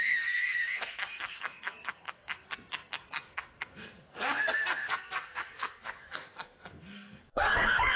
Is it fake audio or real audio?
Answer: fake